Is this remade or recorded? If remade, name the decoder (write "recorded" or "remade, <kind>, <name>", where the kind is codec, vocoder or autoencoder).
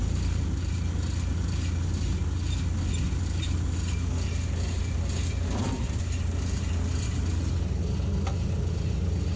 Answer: recorded